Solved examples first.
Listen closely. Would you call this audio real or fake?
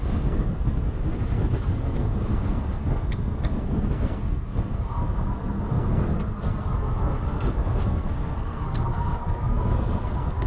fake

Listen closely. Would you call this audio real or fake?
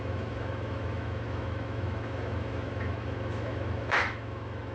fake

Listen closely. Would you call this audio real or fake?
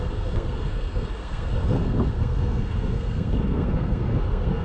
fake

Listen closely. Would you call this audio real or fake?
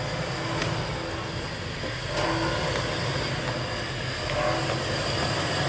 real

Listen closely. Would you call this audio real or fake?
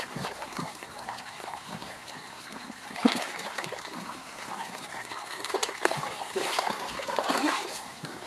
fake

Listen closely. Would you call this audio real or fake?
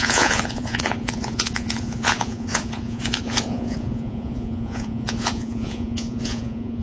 fake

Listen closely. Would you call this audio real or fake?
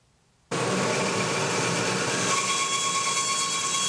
real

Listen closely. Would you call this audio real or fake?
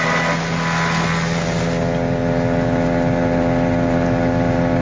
real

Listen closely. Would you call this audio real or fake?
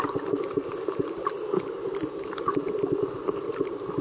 real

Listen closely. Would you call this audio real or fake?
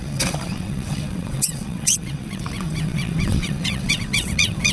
fake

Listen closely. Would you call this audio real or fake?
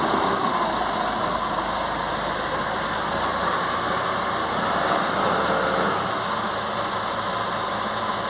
real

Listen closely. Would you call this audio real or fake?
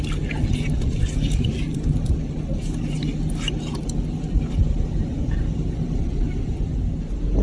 real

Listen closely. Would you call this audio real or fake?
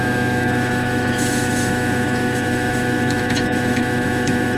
fake